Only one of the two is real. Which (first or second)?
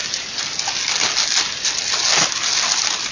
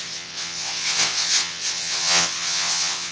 first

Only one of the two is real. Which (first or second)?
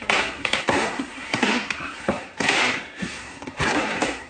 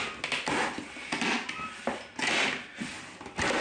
second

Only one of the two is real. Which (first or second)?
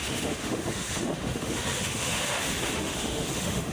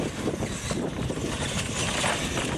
second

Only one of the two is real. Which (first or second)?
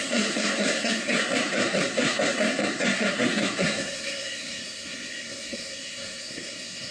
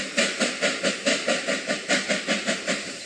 second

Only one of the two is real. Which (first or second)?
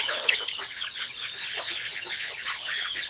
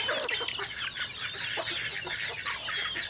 second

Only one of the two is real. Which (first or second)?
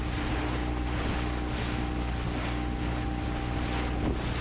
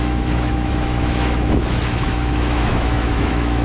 first